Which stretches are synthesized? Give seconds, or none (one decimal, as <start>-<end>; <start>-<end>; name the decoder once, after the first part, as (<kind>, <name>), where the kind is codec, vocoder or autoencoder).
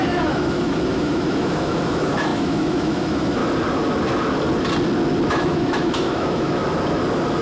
0.0-3.4 (autoencoder, DAC-VAE); 5.3-6.6